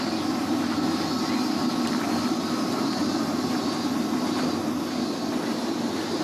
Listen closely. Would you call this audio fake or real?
real